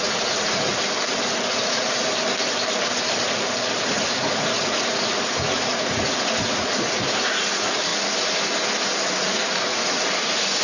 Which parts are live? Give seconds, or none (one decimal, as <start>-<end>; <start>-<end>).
0.7-1.5; 2.0-3.8; 7.9-9.1